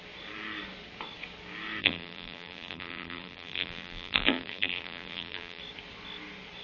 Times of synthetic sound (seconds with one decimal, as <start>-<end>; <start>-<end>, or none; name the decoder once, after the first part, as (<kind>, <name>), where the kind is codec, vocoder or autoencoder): 1.8-5.6 (vocoder, BigVGAN v2)